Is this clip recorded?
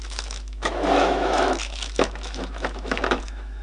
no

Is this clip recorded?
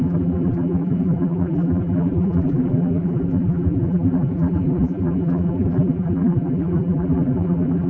no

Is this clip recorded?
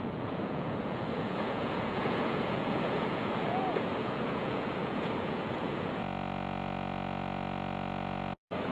no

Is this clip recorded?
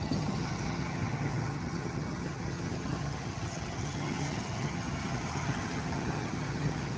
no